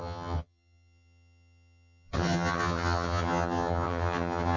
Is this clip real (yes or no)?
no